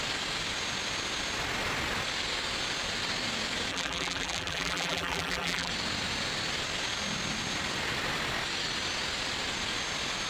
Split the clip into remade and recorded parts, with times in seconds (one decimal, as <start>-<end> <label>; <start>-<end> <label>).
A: 0.0-3.7 recorded; 3.7-5.7 remade; 5.7-10.3 recorded